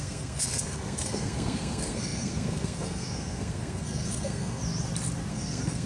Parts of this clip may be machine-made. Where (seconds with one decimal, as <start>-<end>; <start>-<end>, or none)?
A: 0.0-4.6; 5.3-5.9